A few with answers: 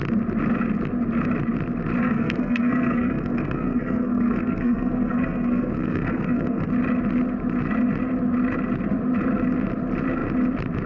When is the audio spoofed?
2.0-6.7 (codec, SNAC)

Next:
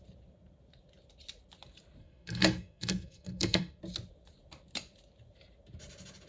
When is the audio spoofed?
2.0-3.8 (codec, SNAC)

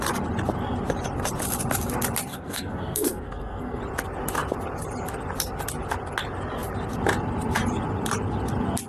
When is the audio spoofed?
2.3-3.8 (codec, SNAC)